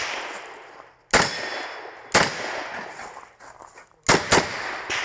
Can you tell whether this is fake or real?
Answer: real